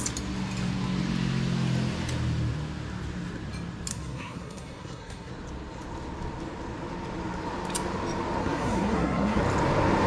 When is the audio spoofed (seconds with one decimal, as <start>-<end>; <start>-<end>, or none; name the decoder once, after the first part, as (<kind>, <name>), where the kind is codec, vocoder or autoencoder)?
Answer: 3.9-5.3 (codec, SNAC); 8.4-9.4